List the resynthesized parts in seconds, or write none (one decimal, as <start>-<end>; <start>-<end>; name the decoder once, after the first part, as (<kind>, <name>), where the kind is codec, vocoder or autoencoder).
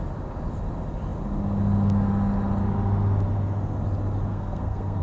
4.3-5.0 (codec, SNAC)